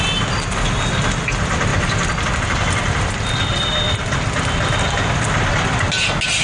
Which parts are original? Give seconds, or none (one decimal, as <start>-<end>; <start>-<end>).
0.0-6.4